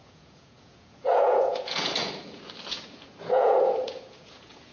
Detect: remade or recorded remade